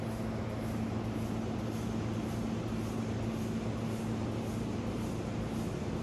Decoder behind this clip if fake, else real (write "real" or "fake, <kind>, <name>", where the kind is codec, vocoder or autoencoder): real